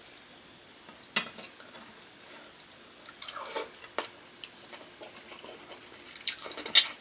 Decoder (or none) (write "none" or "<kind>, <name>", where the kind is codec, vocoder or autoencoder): none